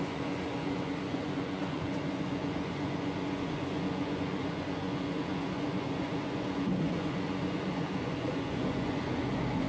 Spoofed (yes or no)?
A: yes